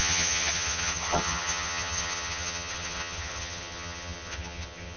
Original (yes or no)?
no